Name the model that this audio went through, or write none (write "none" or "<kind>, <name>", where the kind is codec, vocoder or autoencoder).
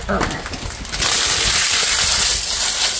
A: none